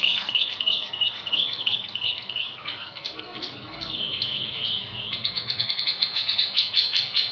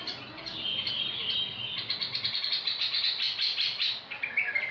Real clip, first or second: second